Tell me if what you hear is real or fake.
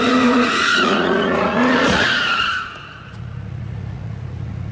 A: fake